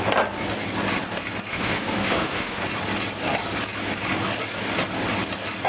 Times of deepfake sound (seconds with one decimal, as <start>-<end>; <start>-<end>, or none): 1.5-2.6